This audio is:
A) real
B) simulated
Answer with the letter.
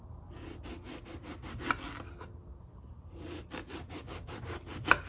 A